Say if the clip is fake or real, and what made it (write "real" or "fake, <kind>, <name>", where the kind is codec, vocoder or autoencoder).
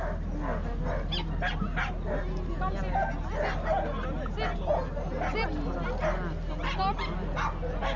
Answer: real